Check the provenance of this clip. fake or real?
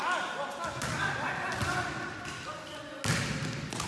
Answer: real